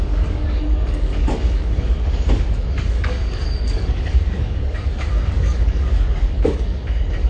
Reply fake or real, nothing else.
fake